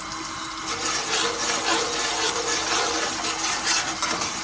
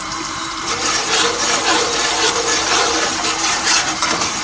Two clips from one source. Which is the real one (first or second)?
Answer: first